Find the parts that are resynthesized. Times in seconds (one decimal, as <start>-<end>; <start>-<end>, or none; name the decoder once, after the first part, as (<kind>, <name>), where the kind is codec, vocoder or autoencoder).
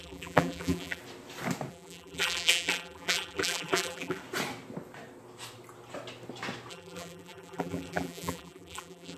0.0-1.0 (vocoder, BigVGAN v2); 1.7-4.2; 6.7-9.2